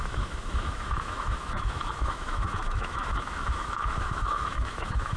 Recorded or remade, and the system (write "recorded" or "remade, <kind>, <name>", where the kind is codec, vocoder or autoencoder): remade, autoencoder, DAC-VAE